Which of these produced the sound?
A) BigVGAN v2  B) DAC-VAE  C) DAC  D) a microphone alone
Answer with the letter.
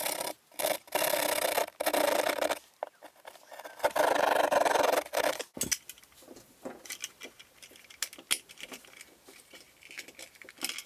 D